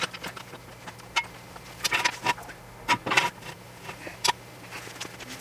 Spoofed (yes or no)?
no